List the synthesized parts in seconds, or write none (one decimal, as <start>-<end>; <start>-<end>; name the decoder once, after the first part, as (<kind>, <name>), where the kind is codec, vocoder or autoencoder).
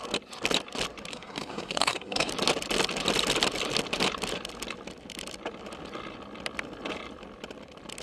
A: 1.1-2.3 (codec, SNAC)